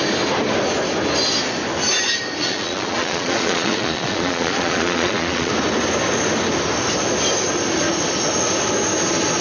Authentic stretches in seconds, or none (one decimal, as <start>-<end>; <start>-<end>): 0.0-2.4; 5.5-9.4